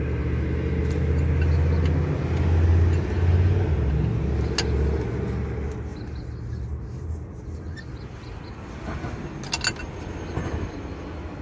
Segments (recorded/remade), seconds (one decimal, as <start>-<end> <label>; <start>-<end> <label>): 0.0-11.4 recorded